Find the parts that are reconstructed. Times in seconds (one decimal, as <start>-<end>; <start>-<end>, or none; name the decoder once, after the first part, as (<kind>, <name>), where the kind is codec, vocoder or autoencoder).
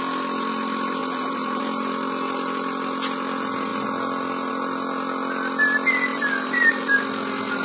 1.0-1.6 (vocoder, BigVGAN v2); 6.1-7.0